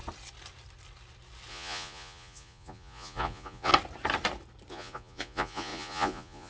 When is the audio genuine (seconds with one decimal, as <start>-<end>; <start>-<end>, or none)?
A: 0.0-1.5; 3.7-4.7